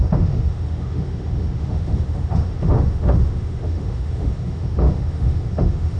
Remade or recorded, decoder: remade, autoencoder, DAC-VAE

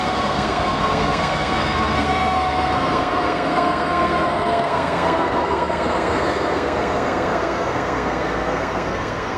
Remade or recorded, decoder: remade, codec, SNAC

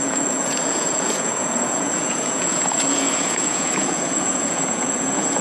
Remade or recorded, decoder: remade, vocoder, Vocos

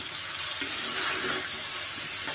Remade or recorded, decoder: recorded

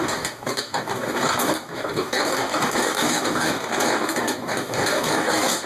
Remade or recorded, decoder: remade, codec, DAC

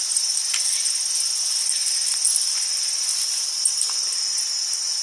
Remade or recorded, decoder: recorded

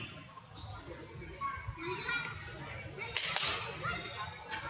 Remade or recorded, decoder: recorded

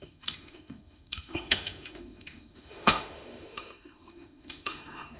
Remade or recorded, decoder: remade, autoencoder, DAC-VAE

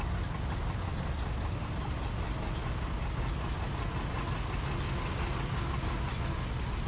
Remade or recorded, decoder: recorded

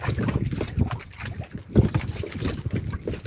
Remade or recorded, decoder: recorded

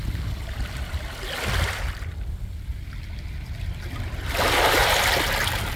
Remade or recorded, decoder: recorded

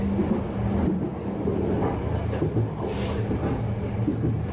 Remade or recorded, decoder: recorded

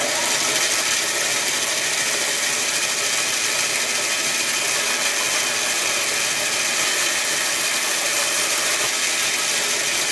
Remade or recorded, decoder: recorded